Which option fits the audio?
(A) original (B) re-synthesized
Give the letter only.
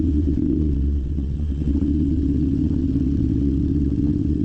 B